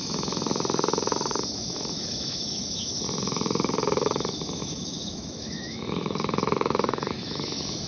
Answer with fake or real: fake